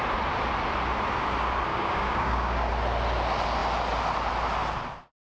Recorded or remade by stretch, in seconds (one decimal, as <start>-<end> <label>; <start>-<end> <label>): 0.0-1.7 recorded; 1.7-2.7 remade; 2.7-5.4 recorded